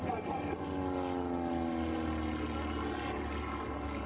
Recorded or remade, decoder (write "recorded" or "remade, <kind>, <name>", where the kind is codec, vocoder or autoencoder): recorded